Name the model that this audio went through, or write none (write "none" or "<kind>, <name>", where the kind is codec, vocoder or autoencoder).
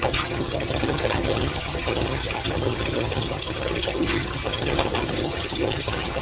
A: vocoder, HiFi-GAN